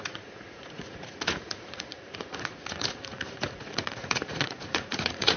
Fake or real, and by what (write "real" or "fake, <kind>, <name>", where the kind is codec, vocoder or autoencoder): fake, vocoder, Vocos